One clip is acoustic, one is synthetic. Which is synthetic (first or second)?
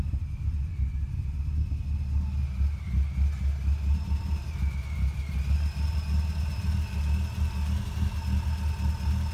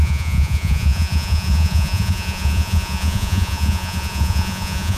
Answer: second